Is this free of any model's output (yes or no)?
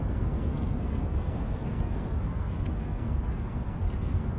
no